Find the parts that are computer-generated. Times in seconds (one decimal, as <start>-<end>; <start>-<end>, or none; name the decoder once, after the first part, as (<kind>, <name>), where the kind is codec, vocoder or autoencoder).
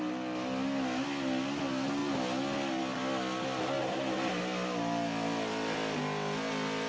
3.8-4.4 (vocoder, BigVGAN v2)